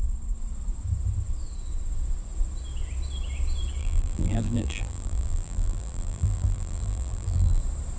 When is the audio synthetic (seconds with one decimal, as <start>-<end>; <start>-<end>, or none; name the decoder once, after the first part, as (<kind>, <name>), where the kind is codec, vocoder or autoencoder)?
3.8-7.6 (vocoder, BigVGAN v2)

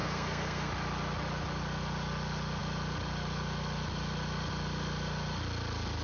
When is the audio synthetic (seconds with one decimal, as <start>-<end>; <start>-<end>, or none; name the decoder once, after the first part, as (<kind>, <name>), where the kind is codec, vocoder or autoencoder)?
0.0-0.7 (codec, SNAC)

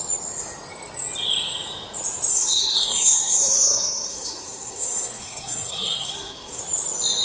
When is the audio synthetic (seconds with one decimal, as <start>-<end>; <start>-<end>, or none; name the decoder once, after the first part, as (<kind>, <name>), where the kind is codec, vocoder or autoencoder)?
2.3-6.6 (codec, SNAC)

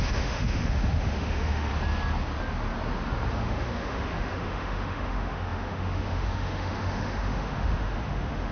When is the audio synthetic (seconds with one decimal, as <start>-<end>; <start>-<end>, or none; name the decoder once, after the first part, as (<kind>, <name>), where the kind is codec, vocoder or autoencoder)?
0.0-1.7 (autoencoder, DAC-VAE); 3.3-8.5

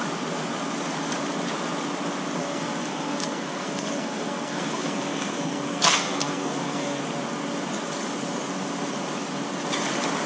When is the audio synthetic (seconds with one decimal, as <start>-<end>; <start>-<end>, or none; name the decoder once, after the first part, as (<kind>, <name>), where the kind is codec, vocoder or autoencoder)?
2.4-7.0 (codec, SNAC)

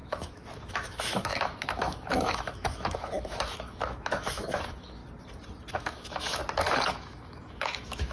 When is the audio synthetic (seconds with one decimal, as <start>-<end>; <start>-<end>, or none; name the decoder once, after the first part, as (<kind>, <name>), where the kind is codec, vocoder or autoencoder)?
0.0-5.0 (autoencoder, DAC-VAE); 5.7-6.4; 6.9-8.1

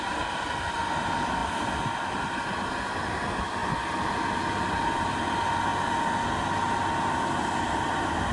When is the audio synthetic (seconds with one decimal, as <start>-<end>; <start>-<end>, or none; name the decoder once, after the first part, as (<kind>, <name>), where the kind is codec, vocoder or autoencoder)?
none